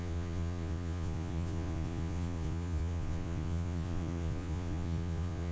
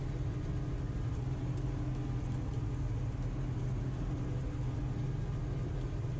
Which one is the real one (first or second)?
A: second